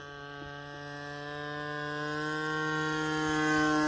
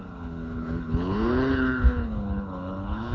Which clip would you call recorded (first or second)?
first